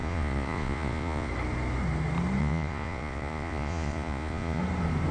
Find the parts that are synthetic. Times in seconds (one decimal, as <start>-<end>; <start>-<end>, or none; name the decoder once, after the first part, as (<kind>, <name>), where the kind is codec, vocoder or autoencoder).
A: 0.0-1.3 (vocoder, Vocos); 2.4-4.6